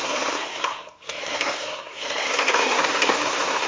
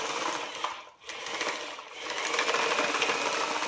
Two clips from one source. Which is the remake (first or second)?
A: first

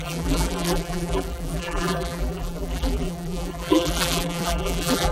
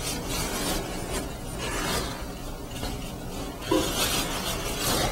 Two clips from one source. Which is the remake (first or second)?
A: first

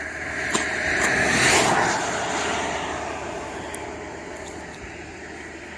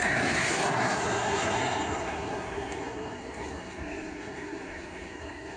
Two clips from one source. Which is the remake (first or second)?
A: second